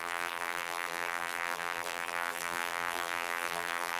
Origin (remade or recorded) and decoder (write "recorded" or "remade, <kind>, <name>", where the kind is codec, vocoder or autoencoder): remade, vocoder, BigVGAN v2